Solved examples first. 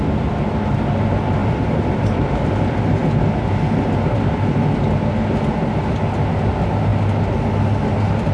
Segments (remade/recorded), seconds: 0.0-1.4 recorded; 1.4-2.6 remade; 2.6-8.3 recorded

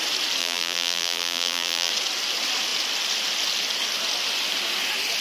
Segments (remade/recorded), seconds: 0.0-0.4 recorded; 0.4-1.9 remade; 1.9-5.2 recorded